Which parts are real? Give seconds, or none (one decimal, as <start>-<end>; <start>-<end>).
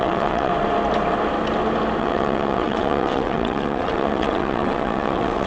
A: 0.5-2.0